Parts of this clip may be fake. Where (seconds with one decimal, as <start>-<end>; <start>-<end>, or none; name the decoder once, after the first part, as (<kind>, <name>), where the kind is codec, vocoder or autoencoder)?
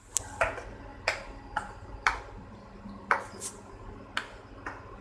0.9-3.9 (vocoder, BigVGAN v2)